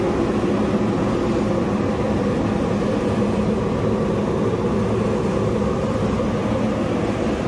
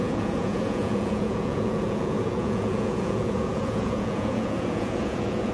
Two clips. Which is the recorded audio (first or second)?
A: first